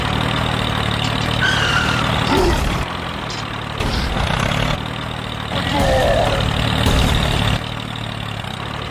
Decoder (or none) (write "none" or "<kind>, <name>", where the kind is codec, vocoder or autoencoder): none